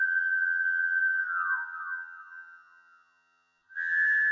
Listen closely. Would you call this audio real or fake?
fake